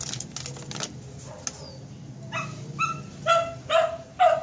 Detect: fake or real real